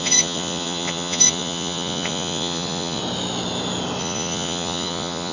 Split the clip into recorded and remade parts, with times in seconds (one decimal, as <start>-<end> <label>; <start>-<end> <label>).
0.0-3.0 remade; 3.0-4.0 recorded; 4.0-5.3 remade